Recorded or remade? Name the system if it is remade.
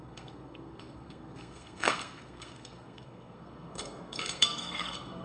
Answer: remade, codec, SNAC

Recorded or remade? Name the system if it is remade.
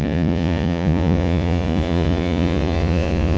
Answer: remade, vocoder, Vocos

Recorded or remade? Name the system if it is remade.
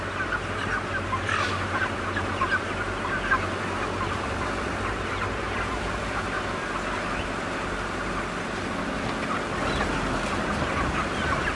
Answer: recorded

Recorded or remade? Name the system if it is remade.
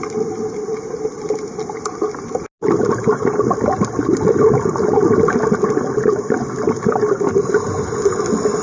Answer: recorded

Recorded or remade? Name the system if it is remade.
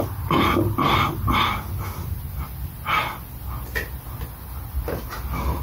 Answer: recorded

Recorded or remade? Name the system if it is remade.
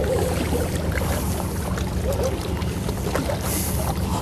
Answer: recorded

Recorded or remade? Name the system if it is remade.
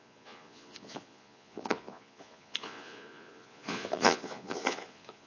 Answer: remade, vocoder, Vocos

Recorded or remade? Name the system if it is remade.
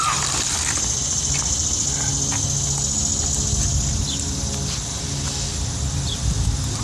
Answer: recorded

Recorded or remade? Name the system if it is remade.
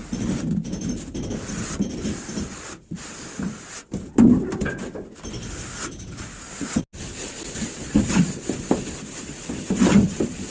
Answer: recorded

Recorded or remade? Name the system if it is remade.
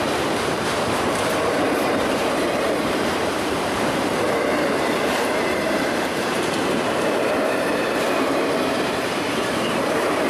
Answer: remade, vocoder, BigVGAN v2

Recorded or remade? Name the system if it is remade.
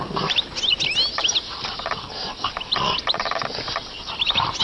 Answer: recorded